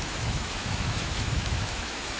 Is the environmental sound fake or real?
fake